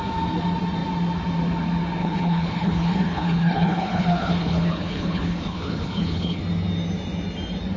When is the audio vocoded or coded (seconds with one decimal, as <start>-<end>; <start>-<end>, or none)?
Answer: 2.0-6.4